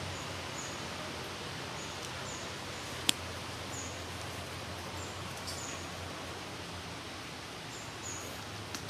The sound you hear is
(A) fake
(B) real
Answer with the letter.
B